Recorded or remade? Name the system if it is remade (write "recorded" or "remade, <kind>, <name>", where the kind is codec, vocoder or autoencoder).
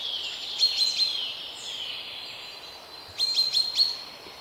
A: recorded